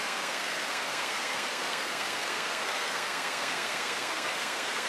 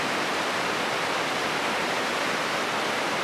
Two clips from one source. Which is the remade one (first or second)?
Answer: first